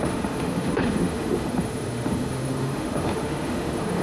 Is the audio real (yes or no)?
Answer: no